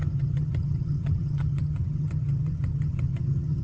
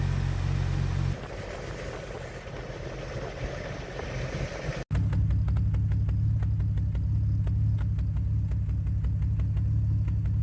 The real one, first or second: second